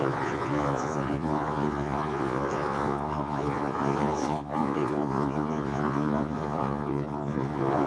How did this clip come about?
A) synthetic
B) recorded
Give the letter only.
A